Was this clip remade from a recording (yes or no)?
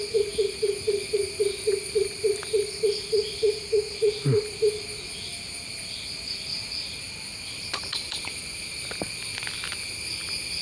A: no